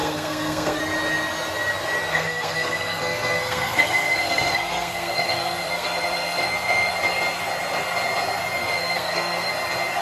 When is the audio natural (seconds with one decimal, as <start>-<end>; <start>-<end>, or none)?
0.8-2.1; 6.9-8.6; 9.5-10.0